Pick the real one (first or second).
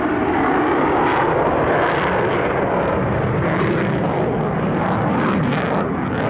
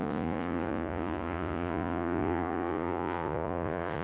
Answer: first